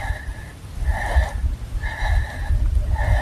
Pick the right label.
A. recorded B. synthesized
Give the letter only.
A